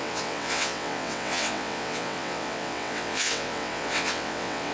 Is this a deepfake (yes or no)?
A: yes